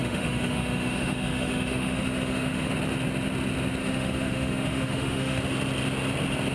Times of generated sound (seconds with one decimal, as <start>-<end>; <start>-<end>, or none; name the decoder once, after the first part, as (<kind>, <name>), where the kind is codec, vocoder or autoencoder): 0.0-2.7 (autoencoder, DAC-VAE); 3.8-5.4